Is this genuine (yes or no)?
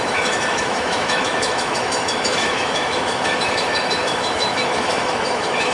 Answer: no